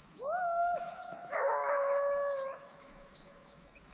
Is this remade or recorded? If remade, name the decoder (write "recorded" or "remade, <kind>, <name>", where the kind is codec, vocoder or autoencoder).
remade, autoencoder, DAC-VAE